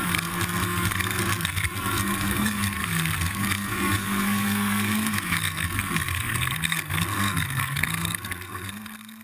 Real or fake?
fake